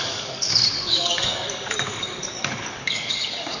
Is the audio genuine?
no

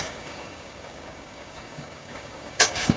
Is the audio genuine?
no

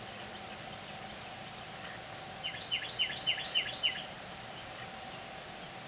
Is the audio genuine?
yes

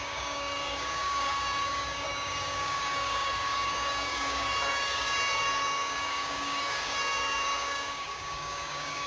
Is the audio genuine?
no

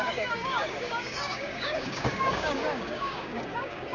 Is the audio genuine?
no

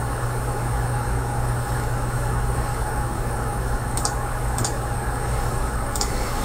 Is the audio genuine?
no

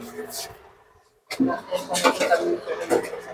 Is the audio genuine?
yes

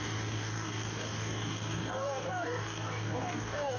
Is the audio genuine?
no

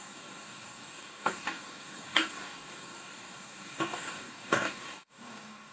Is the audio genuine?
no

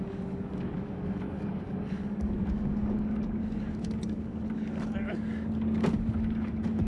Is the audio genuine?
no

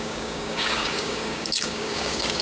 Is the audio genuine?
no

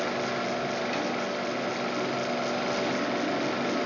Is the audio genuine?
yes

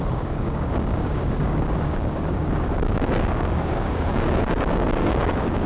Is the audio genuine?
no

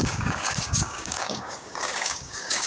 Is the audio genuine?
no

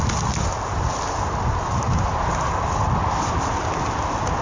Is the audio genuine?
yes